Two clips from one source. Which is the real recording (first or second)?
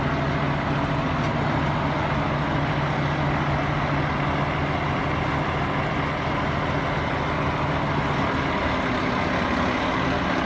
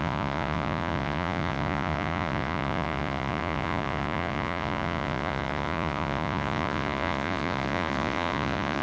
first